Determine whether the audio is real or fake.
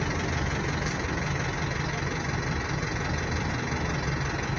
real